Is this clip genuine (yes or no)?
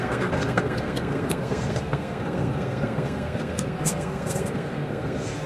no